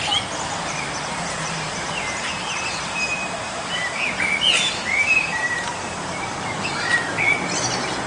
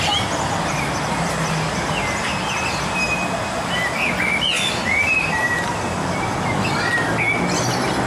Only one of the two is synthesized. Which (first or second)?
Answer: first